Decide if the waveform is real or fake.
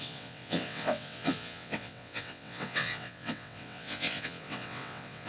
fake